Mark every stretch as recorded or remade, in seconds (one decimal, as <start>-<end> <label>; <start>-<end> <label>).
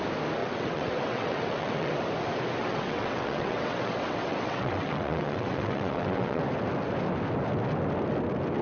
0.0-0.4 recorded; 0.4-2.0 remade; 2.0-2.6 recorded; 2.6-6.4 remade; 6.4-8.6 recorded